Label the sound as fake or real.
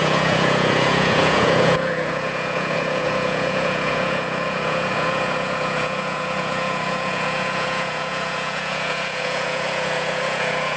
fake